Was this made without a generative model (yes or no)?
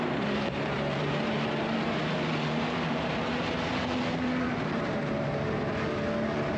no